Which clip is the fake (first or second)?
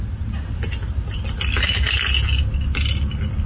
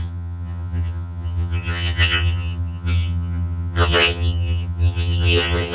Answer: second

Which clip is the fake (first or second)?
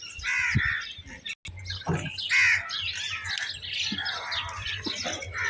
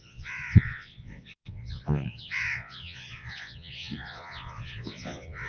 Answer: second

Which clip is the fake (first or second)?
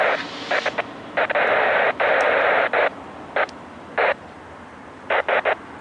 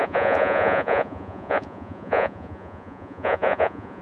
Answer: second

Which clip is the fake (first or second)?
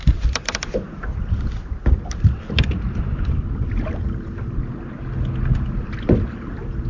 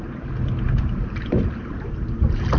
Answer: second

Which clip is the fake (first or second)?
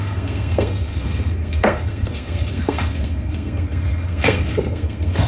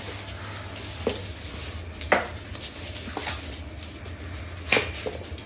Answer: first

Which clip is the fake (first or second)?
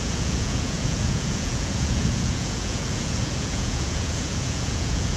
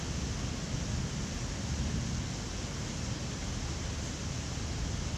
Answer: first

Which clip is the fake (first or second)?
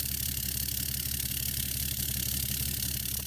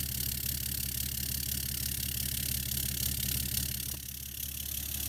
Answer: first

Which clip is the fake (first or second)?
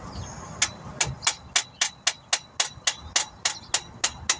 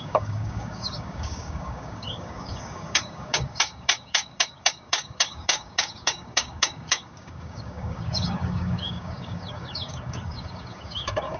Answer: second